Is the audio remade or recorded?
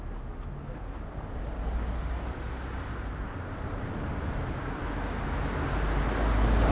recorded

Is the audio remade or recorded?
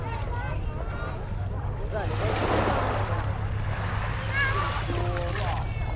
recorded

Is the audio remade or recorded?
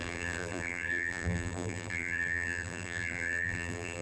remade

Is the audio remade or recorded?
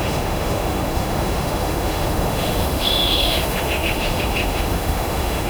remade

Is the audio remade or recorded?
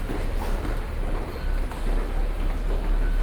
recorded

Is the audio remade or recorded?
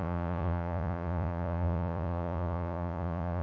remade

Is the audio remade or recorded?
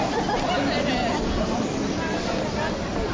recorded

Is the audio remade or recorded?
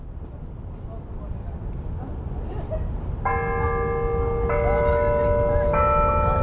recorded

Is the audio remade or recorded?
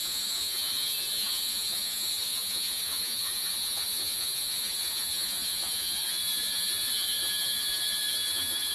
remade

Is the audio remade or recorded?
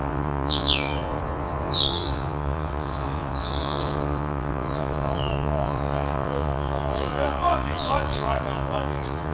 remade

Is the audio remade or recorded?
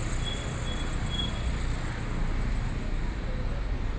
recorded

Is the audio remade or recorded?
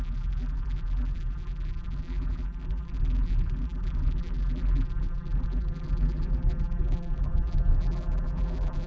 remade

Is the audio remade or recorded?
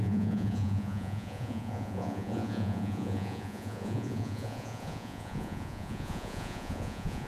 remade